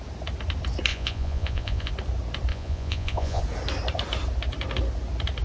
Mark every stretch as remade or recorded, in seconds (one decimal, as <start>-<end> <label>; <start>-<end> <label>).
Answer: 0.0-0.9 recorded; 0.9-1.9 remade; 1.9-2.5 recorded; 2.5-3.4 remade; 3.4-5.4 recorded